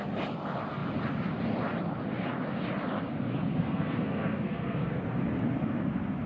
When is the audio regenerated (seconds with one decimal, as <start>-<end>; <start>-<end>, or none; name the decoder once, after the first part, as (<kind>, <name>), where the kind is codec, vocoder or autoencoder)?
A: 3.5-4.9 (codec, SNAC)